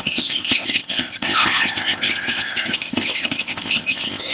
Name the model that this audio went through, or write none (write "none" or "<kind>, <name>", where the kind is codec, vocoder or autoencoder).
codec, ZipCodec